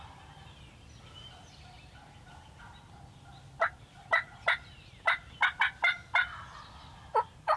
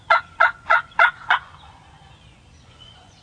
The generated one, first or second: second